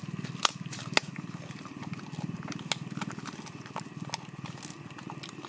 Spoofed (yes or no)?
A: no